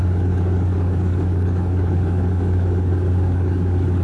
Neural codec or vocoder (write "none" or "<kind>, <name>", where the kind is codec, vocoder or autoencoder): codec, DAC